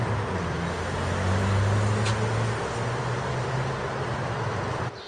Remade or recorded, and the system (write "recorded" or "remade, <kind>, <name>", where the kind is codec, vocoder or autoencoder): recorded